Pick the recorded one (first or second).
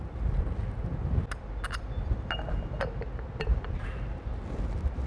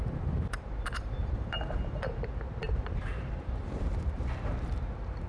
first